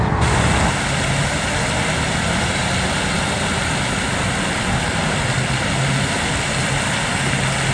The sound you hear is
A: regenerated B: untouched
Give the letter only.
B